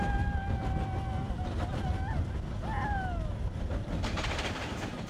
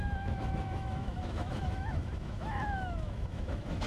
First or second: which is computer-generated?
second